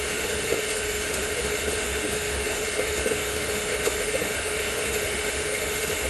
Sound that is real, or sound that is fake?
fake